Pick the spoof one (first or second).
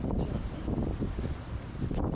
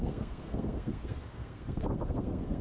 second